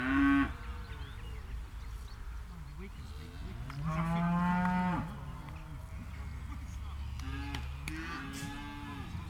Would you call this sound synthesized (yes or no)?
no